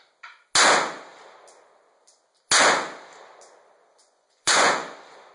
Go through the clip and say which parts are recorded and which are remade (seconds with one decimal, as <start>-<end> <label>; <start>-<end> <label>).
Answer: 0.0-4.0 recorded; 4.0-5.3 remade